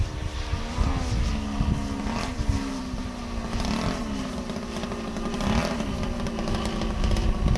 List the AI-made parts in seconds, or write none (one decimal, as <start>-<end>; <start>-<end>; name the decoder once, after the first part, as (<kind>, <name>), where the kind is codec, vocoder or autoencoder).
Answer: 2.3-3.2 (vocoder, BigVGAN v2)